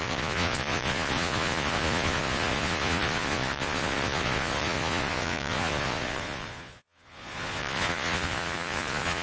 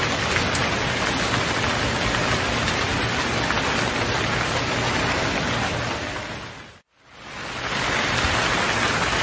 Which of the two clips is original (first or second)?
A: second